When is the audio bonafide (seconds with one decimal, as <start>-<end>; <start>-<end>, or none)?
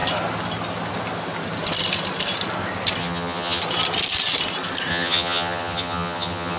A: 0.0-3.0; 3.6-4.9